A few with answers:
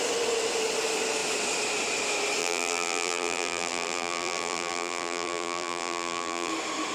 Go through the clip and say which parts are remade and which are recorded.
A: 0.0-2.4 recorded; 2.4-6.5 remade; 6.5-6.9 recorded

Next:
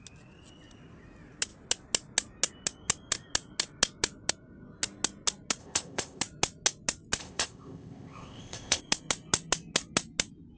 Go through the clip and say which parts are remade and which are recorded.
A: 0.0-5.6 recorded; 5.6-6.2 remade; 6.2-7.2 recorded; 7.2-8.8 remade; 8.8-10.6 recorded

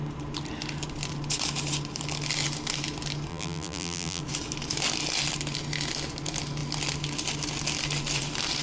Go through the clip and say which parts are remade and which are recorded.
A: 0.0-3.3 recorded; 3.3-4.2 remade; 4.2-8.6 recorded

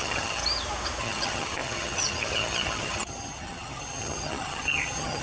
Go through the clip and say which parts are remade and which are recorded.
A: 0.0-0.4 remade; 0.4-1.0 recorded; 1.0-5.2 remade

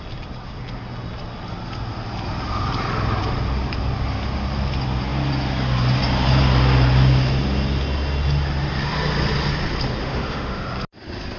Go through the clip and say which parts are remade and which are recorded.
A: 0.0-10.0 recorded; 10.0-10.6 remade; 10.6-11.4 recorded

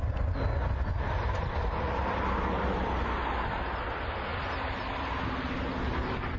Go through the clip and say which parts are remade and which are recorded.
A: 0.0-6.4 recorded

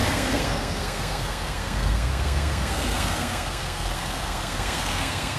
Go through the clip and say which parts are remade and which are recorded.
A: 0.0-5.4 remade

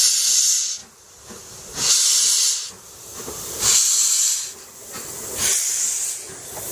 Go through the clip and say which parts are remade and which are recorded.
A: 0.0-6.7 recorded